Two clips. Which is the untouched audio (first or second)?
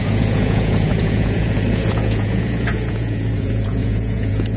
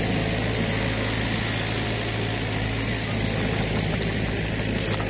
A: second